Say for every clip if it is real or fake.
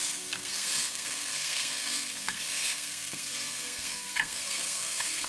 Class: fake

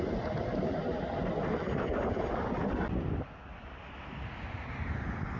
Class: real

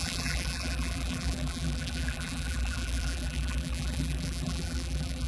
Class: fake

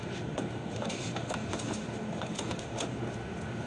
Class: fake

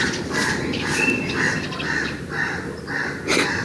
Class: real